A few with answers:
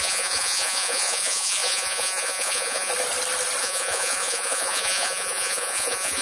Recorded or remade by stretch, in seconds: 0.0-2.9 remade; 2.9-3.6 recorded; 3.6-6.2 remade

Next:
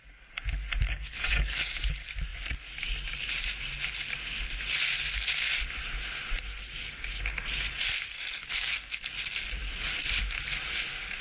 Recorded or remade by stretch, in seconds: 0.0-0.9 recorded; 0.9-1.6 remade; 1.6-8.0 recorded; 8.0-9.0 remade; 9.0-11.2 recorded

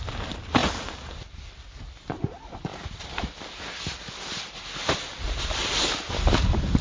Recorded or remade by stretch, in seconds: 0.0-0.6 recorded; 0.6-4.3 remade; 4.3-6.8 recorded

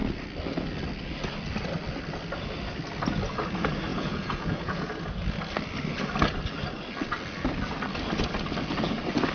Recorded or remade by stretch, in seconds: 0.0-3.9 recorded; 3.9-4.9 remade; 4.9-9.3 recorded

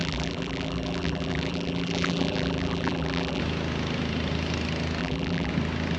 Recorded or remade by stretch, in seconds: 0.0-3.4 remade; 3.4-5.0 recorded; 5.0-5.5 remade; 5.5-6.0 recorded

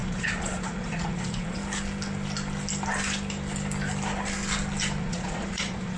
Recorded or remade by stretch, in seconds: 0.0-1.6 remade; 1.6-5.0 recorded; 5.0-6.0 remade